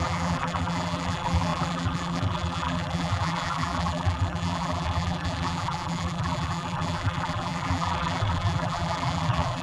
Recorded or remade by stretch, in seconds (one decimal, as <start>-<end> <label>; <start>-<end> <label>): 0.0-9.6 remade